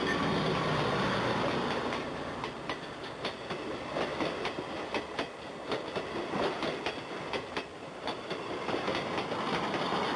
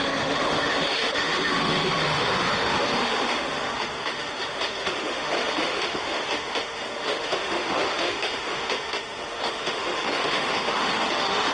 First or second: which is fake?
second